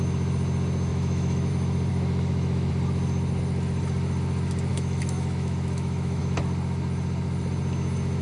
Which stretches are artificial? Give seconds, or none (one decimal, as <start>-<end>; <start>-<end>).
0.9-1.5; 1.9-2.7; 4.7-6.2